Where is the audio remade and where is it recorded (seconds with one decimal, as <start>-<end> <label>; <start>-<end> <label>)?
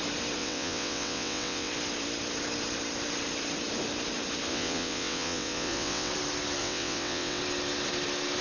0.0-0.4 recorded; 0.4-1.7 remade; 1.7-4.5 recorded; 4.5-6.1 remade; 6.1-6.6 recorded; 6.6-7.4 remade; 7.4-8.4 recorded